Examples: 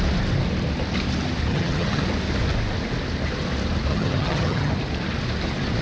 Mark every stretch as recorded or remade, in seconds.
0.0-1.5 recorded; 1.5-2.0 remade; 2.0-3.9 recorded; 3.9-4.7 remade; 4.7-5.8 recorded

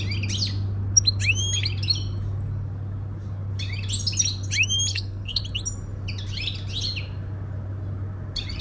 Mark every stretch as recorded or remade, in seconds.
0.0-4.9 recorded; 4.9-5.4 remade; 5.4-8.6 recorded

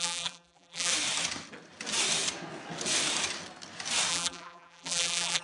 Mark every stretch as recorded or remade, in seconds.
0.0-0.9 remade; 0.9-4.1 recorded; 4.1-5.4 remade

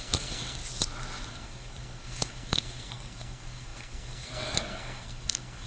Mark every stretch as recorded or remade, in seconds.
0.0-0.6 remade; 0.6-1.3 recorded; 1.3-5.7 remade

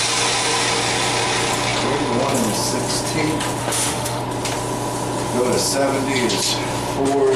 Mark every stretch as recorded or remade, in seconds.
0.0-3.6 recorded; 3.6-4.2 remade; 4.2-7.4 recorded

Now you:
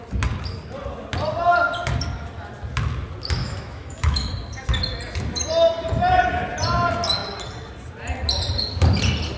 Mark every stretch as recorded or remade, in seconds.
0.0-3.4 recorded; 3.4-4.3 remade; 4.3-9.4 recorded

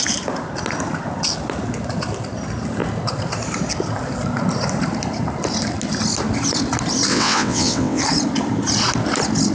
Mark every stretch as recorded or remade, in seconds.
0.0-7.1 recorded; 7.1-8.0 remade; 8.0-9.5 recorded